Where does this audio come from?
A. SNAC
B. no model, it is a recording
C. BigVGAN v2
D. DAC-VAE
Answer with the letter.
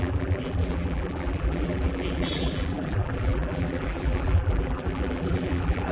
C